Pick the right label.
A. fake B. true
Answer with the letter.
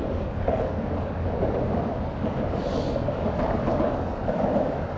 A